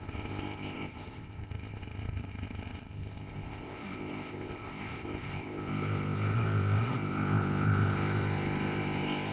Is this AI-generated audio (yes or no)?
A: yes